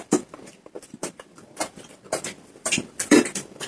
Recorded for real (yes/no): no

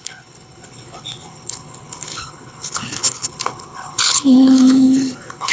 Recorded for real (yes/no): no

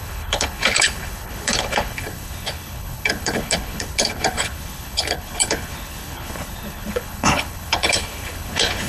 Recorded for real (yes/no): no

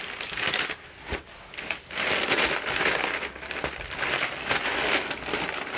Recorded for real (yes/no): yes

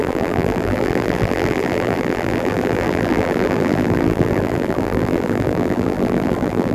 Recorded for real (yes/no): no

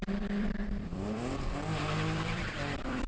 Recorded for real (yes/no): no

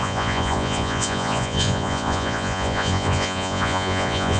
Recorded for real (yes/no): no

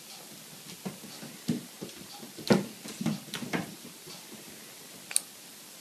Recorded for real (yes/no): yes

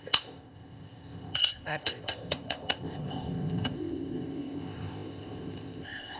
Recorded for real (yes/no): no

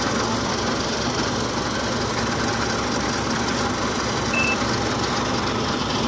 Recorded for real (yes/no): yes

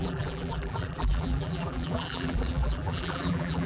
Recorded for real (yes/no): no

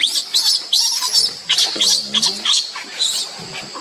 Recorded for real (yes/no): yes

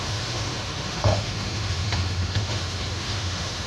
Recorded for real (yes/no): no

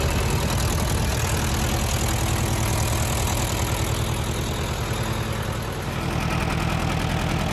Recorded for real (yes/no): yes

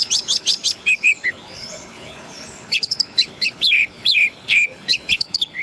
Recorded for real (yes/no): no